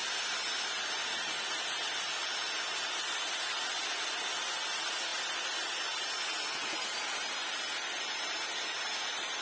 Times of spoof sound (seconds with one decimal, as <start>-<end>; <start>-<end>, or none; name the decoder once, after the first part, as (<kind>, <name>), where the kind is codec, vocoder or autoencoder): none